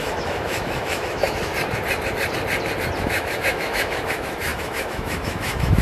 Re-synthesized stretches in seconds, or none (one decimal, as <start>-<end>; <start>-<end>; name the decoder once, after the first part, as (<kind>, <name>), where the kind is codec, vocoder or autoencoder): 0.0-1.5 (autoencoder, DAC-VAE); 3.0-5.8